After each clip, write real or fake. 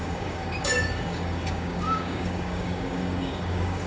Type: fake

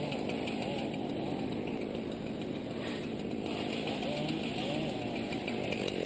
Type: real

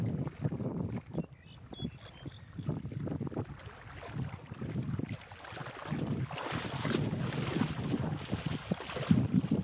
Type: real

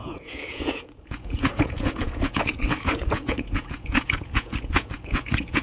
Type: fake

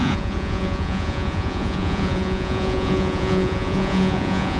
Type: fake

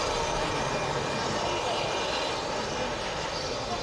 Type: real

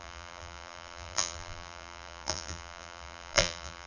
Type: fake